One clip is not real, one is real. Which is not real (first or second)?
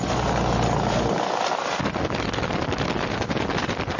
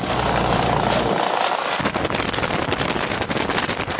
second